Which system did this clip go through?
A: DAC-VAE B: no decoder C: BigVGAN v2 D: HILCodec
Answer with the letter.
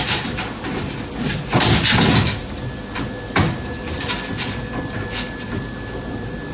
B